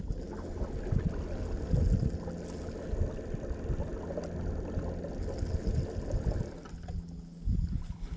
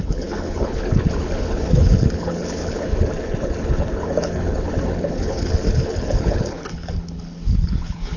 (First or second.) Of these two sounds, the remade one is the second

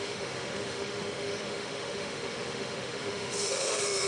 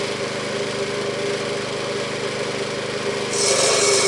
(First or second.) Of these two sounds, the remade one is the first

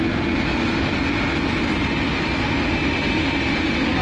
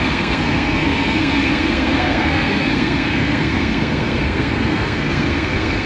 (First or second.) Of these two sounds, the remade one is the second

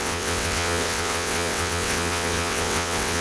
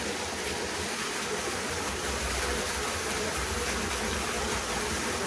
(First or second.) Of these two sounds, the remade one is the first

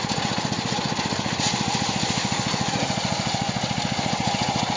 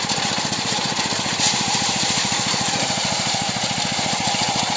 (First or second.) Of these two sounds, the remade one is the second